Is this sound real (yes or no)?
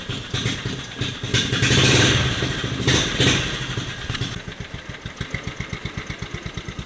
yes